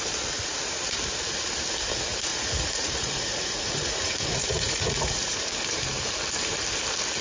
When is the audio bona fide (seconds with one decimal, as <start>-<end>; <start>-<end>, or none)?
0.0-2.3; 5.5-7.2